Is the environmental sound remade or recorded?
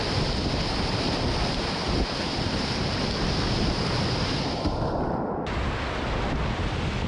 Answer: recorded